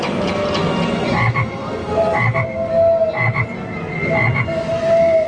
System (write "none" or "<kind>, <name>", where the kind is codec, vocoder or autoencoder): none